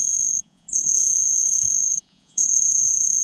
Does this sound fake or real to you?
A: fake